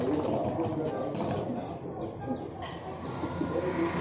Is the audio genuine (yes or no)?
yes